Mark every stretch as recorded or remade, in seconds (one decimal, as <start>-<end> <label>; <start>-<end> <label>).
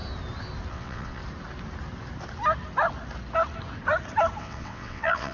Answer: 0.0-0.7 recorded; 0.7-1.2 remade; 1.2-4.4 recorded; 4.4-5.3 remade